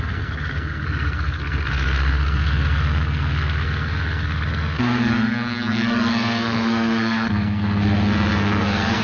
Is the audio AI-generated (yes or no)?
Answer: yes